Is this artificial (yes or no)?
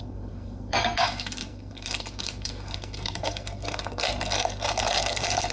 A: yes